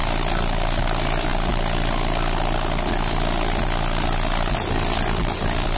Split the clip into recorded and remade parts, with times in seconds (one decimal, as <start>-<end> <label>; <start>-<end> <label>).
0.0-5.8 recorded